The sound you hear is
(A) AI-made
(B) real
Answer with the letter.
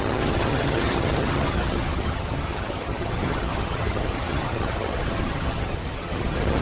A